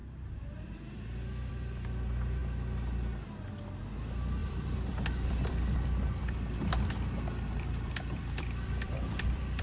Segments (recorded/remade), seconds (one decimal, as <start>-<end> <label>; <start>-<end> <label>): 0.0-4.4 recorded; 4.4-9.6 remade